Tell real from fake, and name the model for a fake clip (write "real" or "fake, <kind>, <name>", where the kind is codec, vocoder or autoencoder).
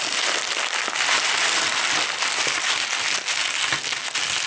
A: real